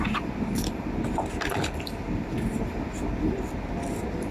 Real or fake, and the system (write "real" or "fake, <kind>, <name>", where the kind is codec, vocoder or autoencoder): real